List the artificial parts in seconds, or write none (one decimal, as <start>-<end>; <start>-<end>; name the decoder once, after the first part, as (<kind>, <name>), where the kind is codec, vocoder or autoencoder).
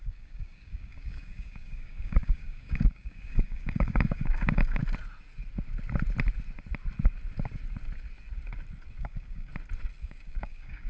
0.0-4.8 (codec, DAC); 9.0-9.5; 10.0-10.9